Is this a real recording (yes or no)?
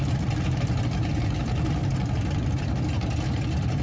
yes